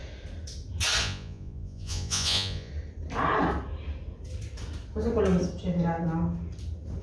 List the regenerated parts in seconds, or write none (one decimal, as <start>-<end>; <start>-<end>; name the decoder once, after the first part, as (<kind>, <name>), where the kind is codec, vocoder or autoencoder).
1.0-2.7 (vocoder, Vocos)

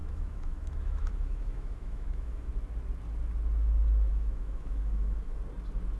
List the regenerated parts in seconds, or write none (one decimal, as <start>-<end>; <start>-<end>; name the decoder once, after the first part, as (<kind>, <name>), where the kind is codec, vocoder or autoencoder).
0.0-2.5 (autoencoder, DAC-VAE); 4.1-5.4

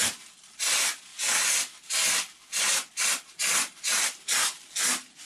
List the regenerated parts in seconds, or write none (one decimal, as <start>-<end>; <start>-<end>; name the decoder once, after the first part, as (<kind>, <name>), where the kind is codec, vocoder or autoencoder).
none

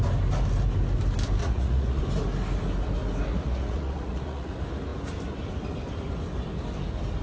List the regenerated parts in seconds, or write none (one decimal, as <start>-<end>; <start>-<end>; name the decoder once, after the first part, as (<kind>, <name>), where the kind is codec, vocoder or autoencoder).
1.4-2.0 (vocoder, Vocos); 3.3-4.5